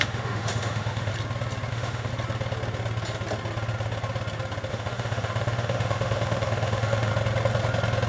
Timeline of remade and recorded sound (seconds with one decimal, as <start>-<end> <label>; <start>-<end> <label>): 0.0-1.1 remade; 1.1-1.7 recorded; 1.7-2.1 remade; 2.1-4.7 recorded; 4.7-7.1 remade; 7.1-8.1 recorded

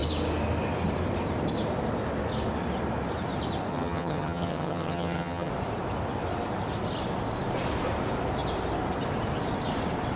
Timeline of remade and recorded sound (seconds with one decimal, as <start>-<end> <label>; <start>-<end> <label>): 0.0-3.7 recorded; 3.7-5.5 remade; 5.5-10.2 recorded

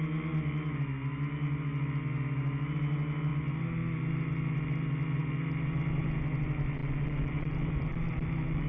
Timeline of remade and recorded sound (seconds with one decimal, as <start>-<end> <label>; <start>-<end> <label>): 0.0-8.7 recorded

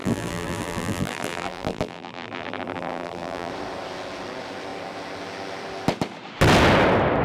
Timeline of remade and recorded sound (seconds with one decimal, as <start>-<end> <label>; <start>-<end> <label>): 0.0-3.5 remade; 3.5-7.2 recorded

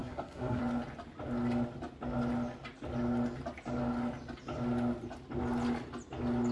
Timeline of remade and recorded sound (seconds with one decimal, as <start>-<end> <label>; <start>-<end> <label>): 0.0-0.6 remade; 0.6-6.5 recorded